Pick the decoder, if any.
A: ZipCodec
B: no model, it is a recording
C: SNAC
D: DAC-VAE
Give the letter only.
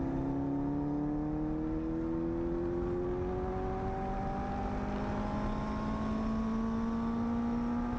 B